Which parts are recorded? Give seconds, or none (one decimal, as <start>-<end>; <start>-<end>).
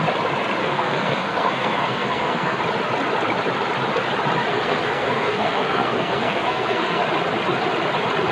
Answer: 0.0-0.6; 2.6-4.5; 7.0-8.3